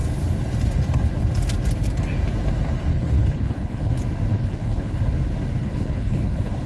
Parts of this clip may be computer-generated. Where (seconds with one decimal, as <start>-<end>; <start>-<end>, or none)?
2.9-3.9; 4.3-5.0; 5.6-6.7